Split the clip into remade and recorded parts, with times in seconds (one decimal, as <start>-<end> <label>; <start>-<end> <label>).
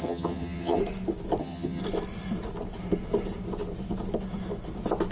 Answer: 0.0-0.8 remade; 0.8-1.4 recorded; 1.4-1.8 remade; 1.8-5.1 recorded